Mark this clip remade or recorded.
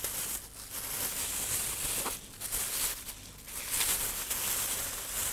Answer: recorded